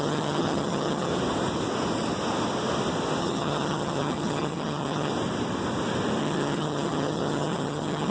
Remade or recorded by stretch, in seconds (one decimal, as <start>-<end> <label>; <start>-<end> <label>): 0.0-1.1 remade; 1.1-3.2 recorded; 3.2-5.1 remade; 5.1-6.2 recorded; 6.2-8.1 remade